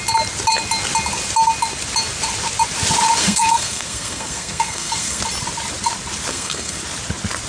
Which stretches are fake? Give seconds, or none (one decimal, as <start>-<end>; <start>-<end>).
3.2-5.2; 6.3-6.8